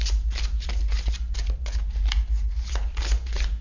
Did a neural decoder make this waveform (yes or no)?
no